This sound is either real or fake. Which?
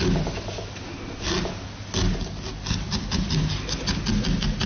real